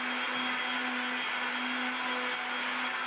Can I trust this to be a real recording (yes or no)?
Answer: yes